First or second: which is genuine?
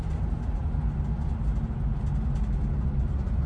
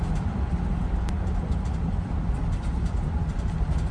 first